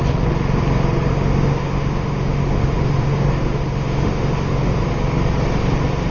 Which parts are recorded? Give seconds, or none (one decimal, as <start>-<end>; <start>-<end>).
0.0-1.1; 4.8-6.1